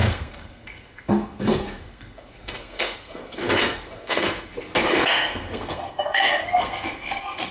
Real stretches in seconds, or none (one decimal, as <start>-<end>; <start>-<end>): 4.5-4.9